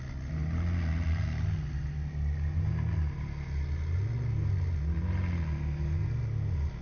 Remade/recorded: recorded